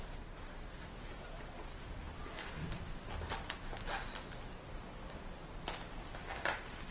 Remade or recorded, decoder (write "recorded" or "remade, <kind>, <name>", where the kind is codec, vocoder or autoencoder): recorded